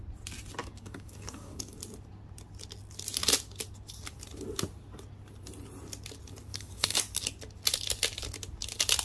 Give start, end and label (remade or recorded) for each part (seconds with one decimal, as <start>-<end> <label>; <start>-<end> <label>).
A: 0.0-0.6 recorded; 0.6-1.8 remade; 1.8-6.5 recorded; 6.5-7.0 remade; 7.0-9.0 recorded